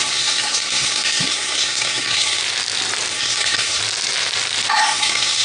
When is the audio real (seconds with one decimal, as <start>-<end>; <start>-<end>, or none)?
2.4-3.1; 3.8-4.7